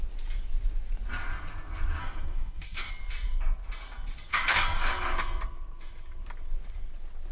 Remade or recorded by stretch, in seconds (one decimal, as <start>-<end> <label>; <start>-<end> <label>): 0.0-2.0 recorded; 2.0-2.9 remade; 2.9-4.3 recorded; 4.3-4.8 remade; 4.8-7.3 recorded